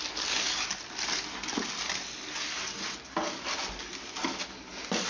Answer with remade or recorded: recorded